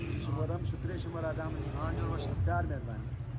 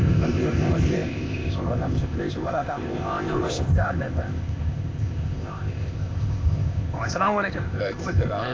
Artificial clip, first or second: second